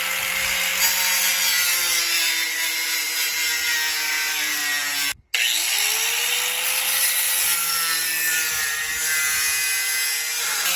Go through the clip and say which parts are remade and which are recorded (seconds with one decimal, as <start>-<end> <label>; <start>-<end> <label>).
0.0-0.7 remade; 0.7-1.2 recorded; 1.2-3.3 remade; 3.3-4.1 recorded; 4.1-4.6 remade; 4.6-7.7 recorded; 7.7-8.9 remade; 8.9-10.8 recorded